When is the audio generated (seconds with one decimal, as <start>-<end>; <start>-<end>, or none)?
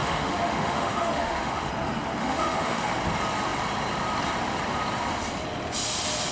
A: 0.0-1.7; 2.2-2.9